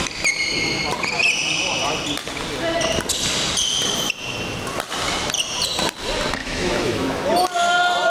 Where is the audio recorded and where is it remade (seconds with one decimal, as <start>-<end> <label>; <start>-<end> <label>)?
0.0-6.4 recorded; 6.4-7.3 remade; 7.3-8.1 recorded